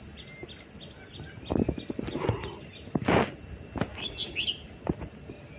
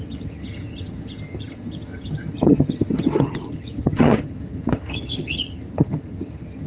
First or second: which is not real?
second